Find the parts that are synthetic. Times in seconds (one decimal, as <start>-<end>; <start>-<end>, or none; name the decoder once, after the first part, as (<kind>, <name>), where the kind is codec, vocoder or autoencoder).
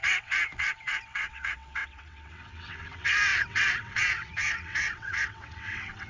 0.0-6.1 (vocoder, WaveNeXt)